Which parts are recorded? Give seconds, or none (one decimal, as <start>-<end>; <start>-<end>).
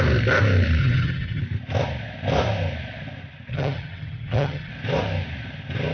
0.0-0.8; 1.4-3.5; 4.7-5.9